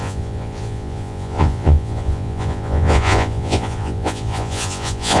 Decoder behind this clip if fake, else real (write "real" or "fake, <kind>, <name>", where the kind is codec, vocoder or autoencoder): fake, vocoder, Vocos